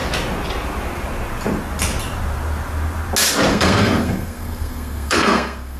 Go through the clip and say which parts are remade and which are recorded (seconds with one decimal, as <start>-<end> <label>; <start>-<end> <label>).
0.0-3.5 recorded; 3.5-5.8 remade